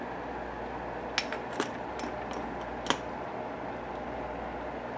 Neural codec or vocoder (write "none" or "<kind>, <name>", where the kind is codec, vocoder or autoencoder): none